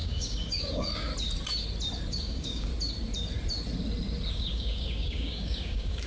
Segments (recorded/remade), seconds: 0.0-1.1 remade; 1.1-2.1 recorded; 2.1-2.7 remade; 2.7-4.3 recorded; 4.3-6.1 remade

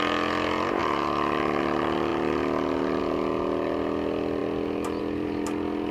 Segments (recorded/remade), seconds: 0.0-5.9 recorded

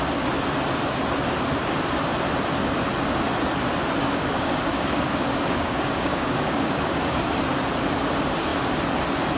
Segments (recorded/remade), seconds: 0.0-4.0 recorded; 4.0-7.2 remade; 7.2-9.4 recorded

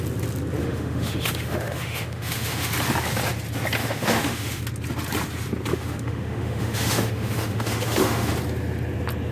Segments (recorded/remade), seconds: 0.0-0.6 recorded; 0.6-2.7 remade; 2.7-3.8 recorded; 3.8-4.6 remade; 4.6-5.7 recorded; 5.7-8.3 remade; 8.3-9.3 recorded

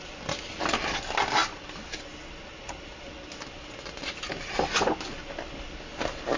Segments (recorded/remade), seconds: 0.0-6.4 recorded

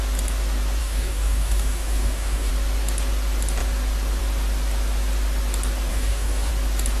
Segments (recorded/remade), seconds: 0.0-0.8 recorded; 0.8-2.5 remade; 2.5-5.9 recorded; 5.9-6.5 remade; 6.5-7.0 recorded

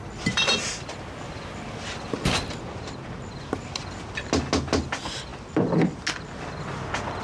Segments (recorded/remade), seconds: 0.0-7.2 recorded